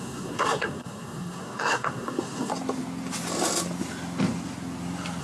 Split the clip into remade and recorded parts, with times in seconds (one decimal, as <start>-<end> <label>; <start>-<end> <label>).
0.0-2.5 remade; 2.5-5.2 recorded